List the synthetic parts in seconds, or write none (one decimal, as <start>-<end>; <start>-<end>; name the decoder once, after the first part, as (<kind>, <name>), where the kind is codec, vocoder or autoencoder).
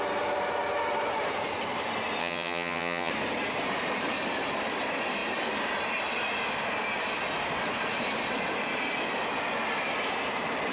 2.2-3.1 (vocoder, HiFi-GAN)